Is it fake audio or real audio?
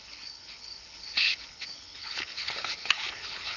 fake